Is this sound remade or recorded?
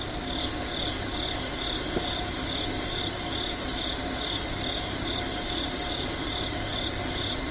recorded